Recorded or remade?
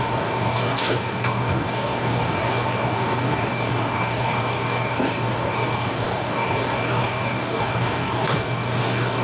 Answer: remade